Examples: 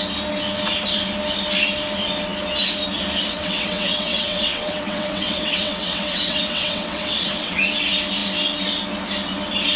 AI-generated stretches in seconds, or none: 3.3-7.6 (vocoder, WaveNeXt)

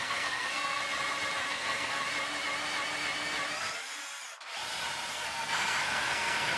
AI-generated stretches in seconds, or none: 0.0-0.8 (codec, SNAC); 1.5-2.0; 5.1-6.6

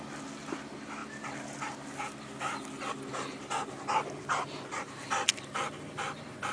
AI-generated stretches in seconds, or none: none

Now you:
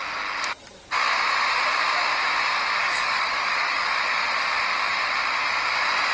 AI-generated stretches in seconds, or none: 2.8-3.9 (codec, DAC)

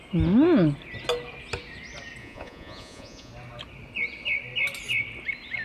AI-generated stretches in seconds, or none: 2.2-3.3 (vocoder, Vocos)